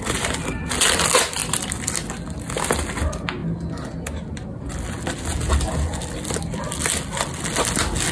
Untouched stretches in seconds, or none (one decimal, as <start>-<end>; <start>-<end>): 0.0-8.1